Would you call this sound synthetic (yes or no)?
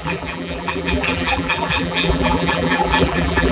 yes